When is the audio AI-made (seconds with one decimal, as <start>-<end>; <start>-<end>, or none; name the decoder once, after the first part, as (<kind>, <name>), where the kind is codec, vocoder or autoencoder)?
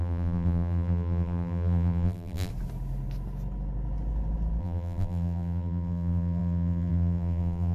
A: 0.0-2.5 (vocoder, BigVGAN v2); 4.6-7.7